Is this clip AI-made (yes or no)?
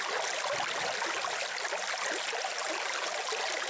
no